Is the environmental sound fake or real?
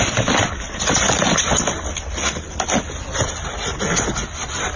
real